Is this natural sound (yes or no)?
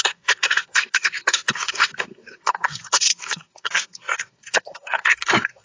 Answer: no